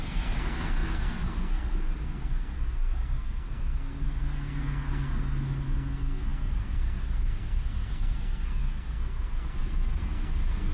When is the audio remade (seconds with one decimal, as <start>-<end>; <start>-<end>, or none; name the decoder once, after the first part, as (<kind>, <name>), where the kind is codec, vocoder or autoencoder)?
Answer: 0.0-10.7 (codec, SNAC)